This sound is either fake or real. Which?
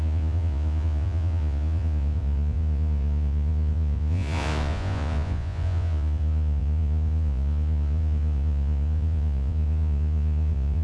fake